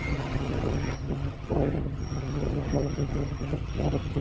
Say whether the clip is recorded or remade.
remade